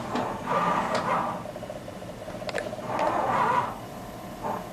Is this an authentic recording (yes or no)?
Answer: yes